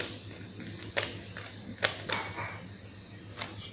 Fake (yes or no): no